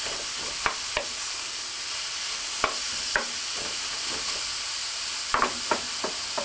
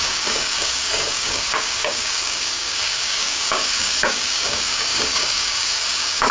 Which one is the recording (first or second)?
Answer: first